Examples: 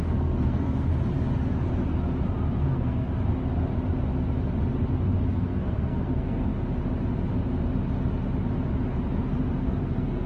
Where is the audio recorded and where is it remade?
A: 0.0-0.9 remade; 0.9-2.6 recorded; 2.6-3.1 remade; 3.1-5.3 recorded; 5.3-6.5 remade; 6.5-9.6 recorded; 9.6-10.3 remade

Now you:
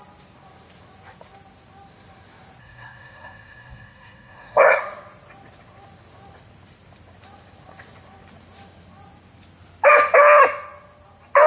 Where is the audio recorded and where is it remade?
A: 0.0-2.6 recorded; 2.6-4.8 remade; 4.8-11.5 recorded

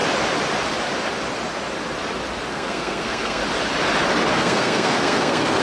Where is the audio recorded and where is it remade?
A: 0.0-2.5 recorded; 2.5-3.4 remade; 3.4-4.3 recorded; 4.3-5.6 remade

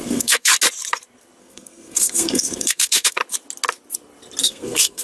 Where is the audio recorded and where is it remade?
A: 0.0-0.5 remade; 0.5-1.4 recorded; 1.4-3.2 remade; 3.2-4.4 recorded; 4.4-5.0 remade